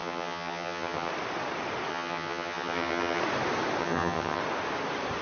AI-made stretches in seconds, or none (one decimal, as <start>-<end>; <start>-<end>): 0.0-1.1; 1.9-3.2; 3.8-4.4